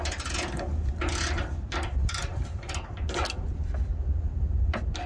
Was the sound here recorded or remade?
recorded